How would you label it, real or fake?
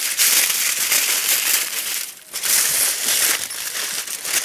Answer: fake